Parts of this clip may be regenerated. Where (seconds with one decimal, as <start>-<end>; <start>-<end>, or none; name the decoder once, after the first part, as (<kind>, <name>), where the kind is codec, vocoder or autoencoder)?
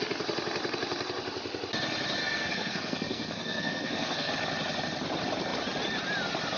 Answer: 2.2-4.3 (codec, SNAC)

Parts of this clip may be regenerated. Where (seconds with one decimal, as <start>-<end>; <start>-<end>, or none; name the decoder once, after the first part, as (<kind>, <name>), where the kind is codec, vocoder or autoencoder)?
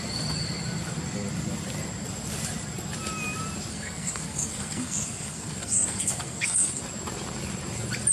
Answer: 3.7-6.8 (codec, SNAC)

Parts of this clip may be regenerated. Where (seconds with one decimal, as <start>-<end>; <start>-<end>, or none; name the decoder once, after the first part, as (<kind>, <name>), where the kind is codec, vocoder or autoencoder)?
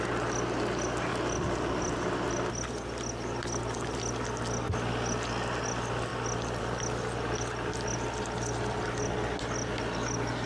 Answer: none